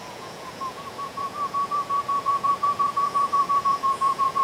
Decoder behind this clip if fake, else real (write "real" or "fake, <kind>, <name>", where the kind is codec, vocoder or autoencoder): fake, vocoder, Vocos